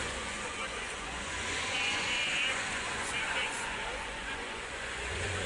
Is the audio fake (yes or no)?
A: yes